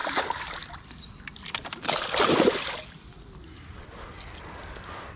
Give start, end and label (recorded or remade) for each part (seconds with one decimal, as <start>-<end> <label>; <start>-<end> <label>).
0.0-5.2 recorded